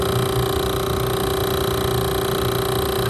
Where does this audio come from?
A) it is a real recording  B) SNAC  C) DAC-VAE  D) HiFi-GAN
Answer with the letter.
A